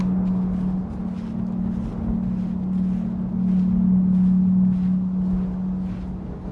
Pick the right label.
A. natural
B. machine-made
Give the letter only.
A